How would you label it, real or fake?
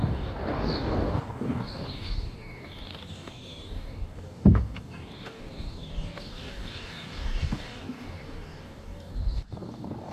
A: fake